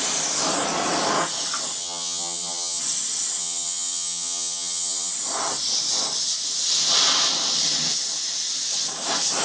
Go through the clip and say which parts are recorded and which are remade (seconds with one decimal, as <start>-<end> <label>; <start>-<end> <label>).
0.0-1.8 recorded; 1.8-2.8 remade; 2.8-3.4 recorded; 3.4-5.1 remade; 5.1-9.4 recorded